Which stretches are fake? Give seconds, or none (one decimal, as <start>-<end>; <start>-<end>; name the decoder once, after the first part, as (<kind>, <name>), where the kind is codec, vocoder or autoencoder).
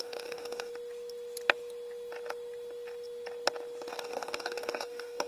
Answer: 0.0-0.7 (codec, DAC); 3.9-5.3